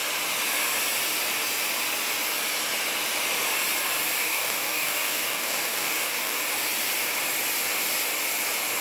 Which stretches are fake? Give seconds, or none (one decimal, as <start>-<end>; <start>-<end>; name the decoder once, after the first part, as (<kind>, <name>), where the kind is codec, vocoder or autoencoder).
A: 4.2-6.4 (codec, DAC)